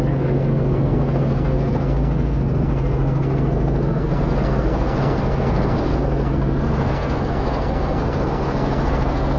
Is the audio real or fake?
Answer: fake